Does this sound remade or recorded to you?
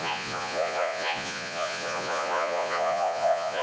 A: remade